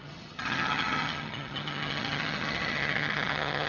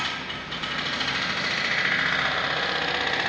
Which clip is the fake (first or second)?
first